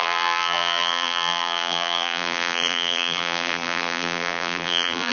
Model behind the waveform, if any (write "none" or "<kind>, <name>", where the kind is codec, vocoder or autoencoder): vocoder, BigVGAN v2